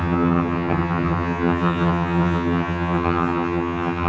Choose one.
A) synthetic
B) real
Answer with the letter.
A